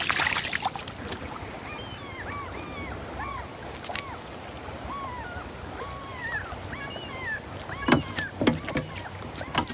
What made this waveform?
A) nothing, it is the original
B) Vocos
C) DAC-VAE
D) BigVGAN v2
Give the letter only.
A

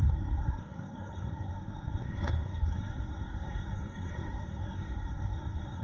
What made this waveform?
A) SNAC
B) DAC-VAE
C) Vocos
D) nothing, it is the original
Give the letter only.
A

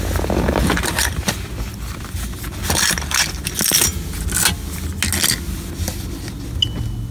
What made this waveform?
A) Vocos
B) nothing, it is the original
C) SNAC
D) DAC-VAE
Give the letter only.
B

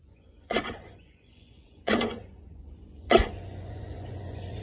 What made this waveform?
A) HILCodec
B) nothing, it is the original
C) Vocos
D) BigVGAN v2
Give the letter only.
C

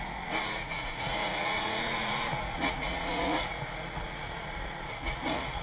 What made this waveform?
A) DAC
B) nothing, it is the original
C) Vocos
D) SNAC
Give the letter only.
C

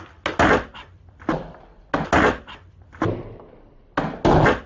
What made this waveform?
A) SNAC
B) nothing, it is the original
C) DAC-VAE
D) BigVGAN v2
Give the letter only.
B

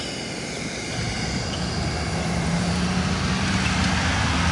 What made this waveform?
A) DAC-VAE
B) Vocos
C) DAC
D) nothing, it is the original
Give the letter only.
D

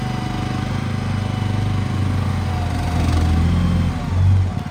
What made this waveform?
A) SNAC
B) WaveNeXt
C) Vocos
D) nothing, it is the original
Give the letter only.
D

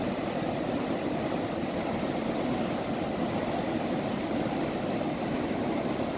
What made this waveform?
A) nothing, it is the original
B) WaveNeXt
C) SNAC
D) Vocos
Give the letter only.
A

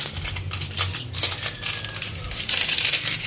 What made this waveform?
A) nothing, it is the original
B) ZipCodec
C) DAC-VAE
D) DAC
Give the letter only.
A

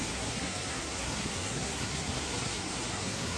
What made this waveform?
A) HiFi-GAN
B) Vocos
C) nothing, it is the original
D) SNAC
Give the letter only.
D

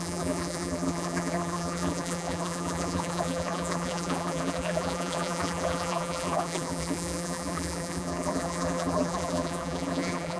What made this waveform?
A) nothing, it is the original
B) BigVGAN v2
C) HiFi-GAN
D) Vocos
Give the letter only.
B